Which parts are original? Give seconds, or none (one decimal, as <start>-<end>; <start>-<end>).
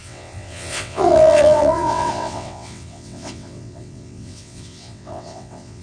none